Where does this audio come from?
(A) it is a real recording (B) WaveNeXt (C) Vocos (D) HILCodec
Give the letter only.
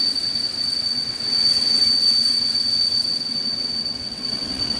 B